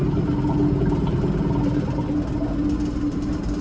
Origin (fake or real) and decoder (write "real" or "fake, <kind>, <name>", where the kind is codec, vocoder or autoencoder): real